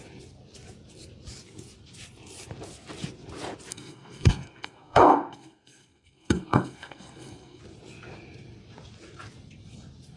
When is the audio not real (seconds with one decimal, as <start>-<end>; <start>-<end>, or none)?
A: 3.7-7.6